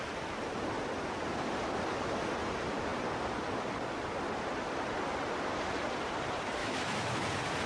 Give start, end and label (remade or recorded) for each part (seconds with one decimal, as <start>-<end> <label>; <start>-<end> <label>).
0.0-6.6 recorded; 6.6-7.2 remade; 7.2-7.7 recorded